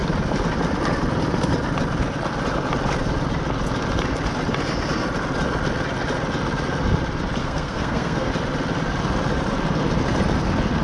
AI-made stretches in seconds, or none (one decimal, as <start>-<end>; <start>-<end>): 7.4-8.3